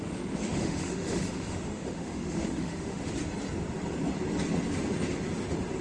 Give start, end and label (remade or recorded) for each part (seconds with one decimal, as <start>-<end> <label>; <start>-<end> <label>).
0.0-3.2 remade; 3.2-5.8 recorded